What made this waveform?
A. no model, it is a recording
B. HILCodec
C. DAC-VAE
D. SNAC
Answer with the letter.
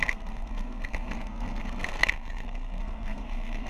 D